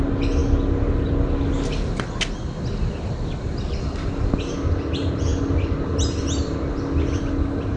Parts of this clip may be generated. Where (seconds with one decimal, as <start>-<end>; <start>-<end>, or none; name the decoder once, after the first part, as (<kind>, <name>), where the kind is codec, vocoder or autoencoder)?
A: none